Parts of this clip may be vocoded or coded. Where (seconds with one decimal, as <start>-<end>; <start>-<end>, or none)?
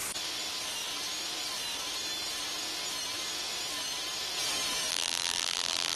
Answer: 4.9-6.0